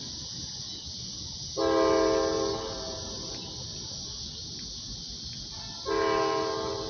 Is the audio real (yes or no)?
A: yes